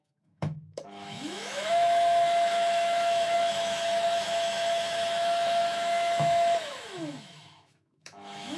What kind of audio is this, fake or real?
fake